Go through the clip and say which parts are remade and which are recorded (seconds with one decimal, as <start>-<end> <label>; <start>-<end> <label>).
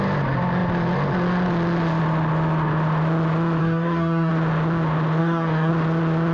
0.0-3.6 recorded; 3.6-4.3 remade; 4.3-5.2 recorded; 5.2-5.7 remade; 5.7-6.3 recorded